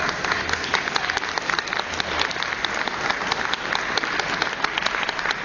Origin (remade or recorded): recorded